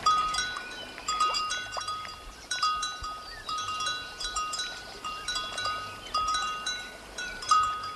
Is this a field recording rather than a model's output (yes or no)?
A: no